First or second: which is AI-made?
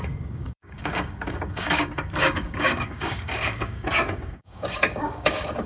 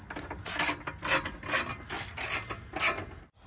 first